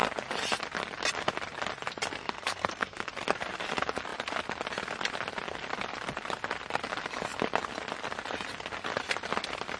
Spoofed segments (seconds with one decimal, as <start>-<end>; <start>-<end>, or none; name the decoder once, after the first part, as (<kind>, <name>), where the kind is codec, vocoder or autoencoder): 2.2-3.1 (codec, SNAC)